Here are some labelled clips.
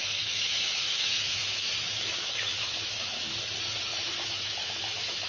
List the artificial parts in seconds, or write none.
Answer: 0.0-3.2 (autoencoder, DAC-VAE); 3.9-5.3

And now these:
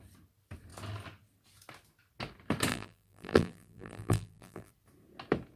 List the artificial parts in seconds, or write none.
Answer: 2.7-4.7 (vocoder, BigVGAN v2)

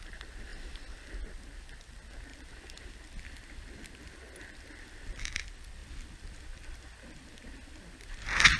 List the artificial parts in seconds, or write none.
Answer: none